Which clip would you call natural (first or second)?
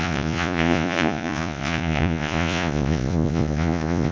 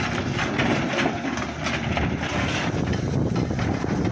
second